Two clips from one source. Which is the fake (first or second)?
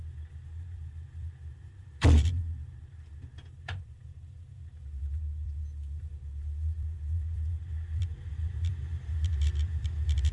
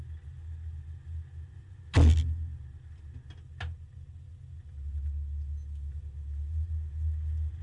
first